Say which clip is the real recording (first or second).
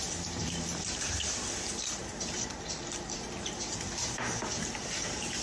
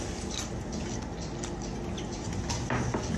second